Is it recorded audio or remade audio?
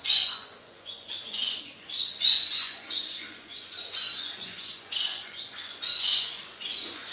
remade